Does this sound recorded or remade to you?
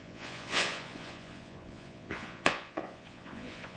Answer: remade